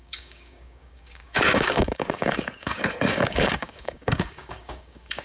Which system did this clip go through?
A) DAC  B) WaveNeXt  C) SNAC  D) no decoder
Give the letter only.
A